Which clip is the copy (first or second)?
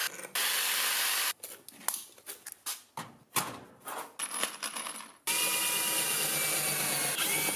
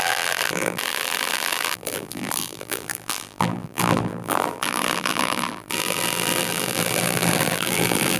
second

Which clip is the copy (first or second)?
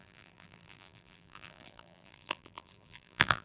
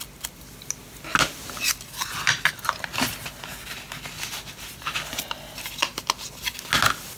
first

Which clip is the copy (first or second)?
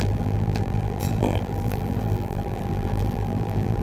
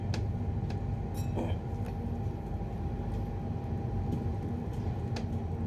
first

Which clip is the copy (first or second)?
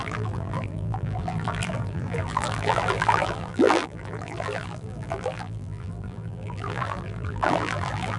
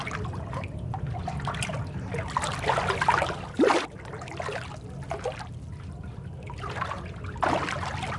first